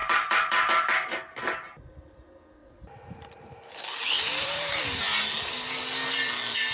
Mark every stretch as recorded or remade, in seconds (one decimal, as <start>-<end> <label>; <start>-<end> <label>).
0.0-2.6 recorded; 2.6-5.0 remade; 5.0-6.7 recorded